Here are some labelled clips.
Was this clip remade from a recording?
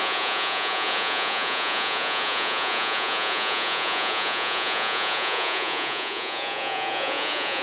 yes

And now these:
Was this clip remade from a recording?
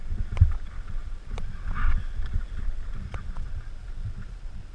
yes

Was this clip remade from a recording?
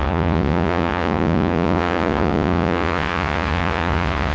yes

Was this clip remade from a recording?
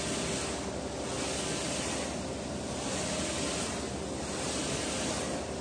no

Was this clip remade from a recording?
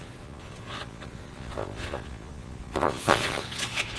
yes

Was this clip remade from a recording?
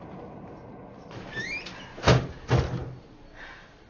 no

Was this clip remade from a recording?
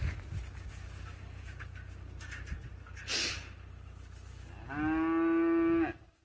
no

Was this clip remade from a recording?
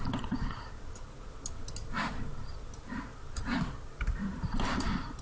no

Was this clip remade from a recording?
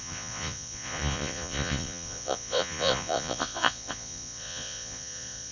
yes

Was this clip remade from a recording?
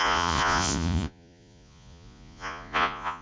yes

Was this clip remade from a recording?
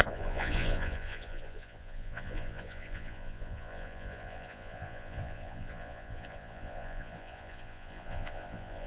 yes